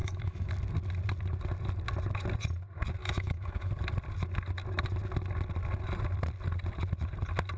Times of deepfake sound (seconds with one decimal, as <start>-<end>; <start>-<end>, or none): 0.0-0.5; 3.0-3.7